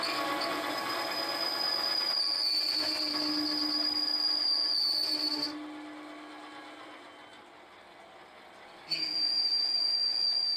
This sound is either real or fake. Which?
real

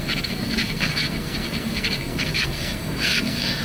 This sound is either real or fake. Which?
fake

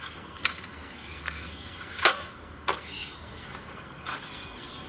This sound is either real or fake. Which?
fake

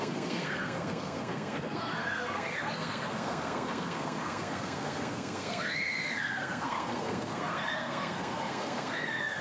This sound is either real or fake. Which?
fake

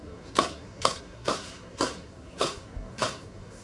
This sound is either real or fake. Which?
fake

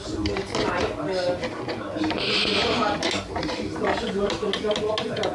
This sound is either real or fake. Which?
real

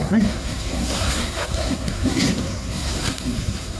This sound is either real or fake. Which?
fake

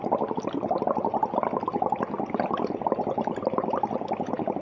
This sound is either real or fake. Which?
real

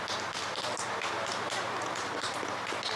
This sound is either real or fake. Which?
real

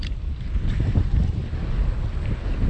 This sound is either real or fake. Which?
real